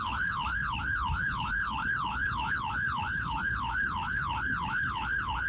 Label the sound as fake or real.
fake